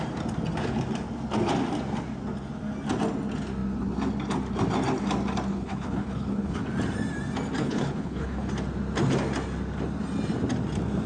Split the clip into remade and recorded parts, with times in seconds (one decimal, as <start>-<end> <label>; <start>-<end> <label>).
0.0-5.5 recorded; 5.5-6.6 remade; 6.6-7.6 recorded; 7.6-8.5 remade; 8.5-11.1 recorded